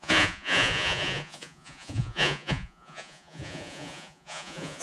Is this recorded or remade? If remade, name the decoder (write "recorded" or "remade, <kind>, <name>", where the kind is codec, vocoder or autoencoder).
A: remade, vocoder, Vocos